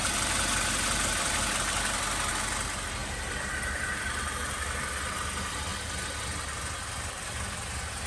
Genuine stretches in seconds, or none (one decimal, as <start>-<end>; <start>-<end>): 2.3-3.0; 5.1-8.1

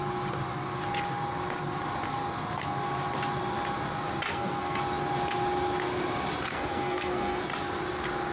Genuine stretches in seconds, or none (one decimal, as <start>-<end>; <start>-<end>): 0.0-4.3; 4.8-6.5; 7.4-8.3

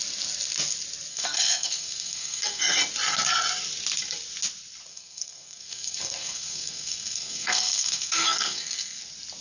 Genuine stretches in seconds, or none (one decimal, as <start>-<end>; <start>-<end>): 0.0-1.1; 2.8-4.9; 9.0-9.4

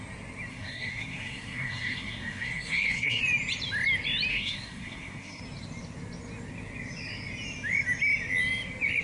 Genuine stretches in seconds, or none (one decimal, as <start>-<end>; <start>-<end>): 0.0-0.5; 3.2-4.3; 5.4-9.0

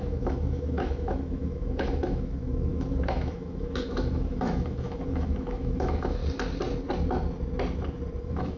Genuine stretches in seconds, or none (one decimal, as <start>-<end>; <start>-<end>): 6.2-8.2